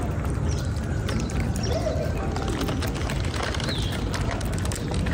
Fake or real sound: real